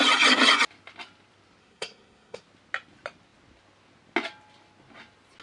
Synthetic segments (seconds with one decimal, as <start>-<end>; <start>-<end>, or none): 1.6-2.4